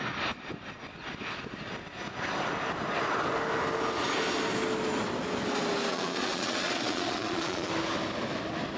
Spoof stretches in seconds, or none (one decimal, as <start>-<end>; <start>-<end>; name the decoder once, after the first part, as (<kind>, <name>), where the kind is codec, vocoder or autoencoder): 5.9-7.7 (vocoder, Vocos)